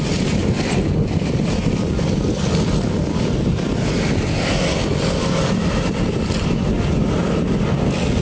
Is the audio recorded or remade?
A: recorded